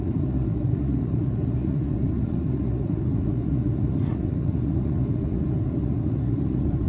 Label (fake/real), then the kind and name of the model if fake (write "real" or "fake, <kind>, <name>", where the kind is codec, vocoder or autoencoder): fake, vocoder, Vocos